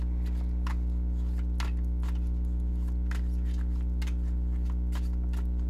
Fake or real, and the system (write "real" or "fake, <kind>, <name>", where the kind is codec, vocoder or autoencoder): real